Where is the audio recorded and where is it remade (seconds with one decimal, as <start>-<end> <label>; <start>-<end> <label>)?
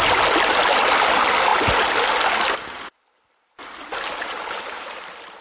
0.0-5.4 recorded